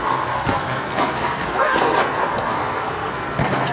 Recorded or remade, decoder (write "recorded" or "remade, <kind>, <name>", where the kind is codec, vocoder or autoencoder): remade, codec, SNAC